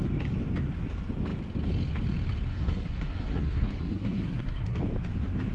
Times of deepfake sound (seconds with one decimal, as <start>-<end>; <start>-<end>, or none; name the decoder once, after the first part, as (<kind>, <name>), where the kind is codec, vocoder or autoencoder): 2.5-4.8 (codec, SNAC)